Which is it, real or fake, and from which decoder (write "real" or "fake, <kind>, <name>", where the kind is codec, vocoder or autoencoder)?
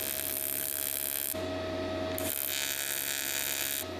real